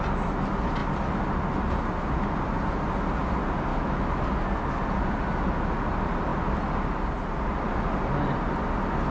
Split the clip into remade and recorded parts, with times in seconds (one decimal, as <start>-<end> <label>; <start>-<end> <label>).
0.0-3.7 recorded; 3.7-4.2 remade; 4.2-9.1 recorded